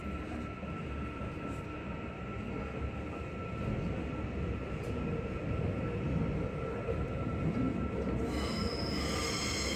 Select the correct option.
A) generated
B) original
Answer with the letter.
B